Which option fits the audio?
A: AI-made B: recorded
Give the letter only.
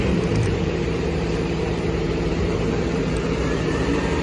A